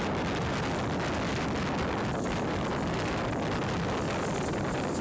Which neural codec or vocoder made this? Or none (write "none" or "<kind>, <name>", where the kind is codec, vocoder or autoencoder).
none